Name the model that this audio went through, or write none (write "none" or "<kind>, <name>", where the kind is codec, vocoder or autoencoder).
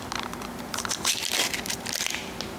none